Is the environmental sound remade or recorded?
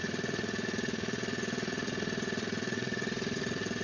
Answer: remade